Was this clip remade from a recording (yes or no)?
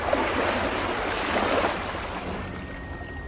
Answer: no